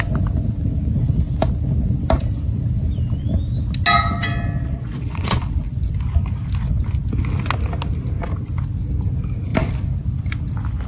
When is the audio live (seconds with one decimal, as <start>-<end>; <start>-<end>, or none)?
0.0-4.6; 5.9-10.9